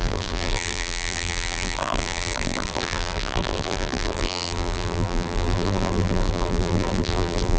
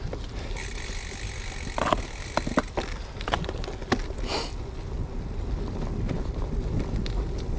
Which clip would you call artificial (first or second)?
first